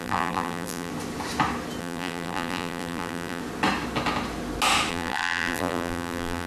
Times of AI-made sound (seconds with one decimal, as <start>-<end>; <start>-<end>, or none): 0.0-0.9; 1.8-3.4; 4.9-6.5